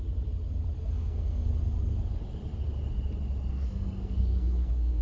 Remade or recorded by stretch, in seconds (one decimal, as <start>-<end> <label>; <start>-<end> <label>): 0.0-0.8 recorded; 0.8-1.5 remade; 1.5-3.5 recorded; 3.5-5.0 remade